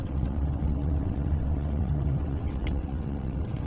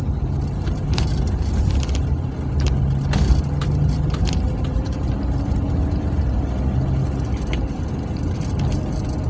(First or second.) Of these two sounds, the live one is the second